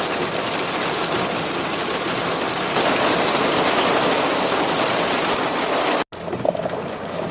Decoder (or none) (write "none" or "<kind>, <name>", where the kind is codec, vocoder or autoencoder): none